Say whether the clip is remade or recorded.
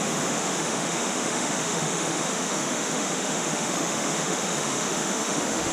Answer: remade